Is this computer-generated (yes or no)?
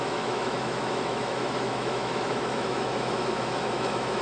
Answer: yes